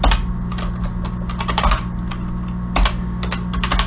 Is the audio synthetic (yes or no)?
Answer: no